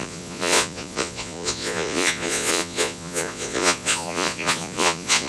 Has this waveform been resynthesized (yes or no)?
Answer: yes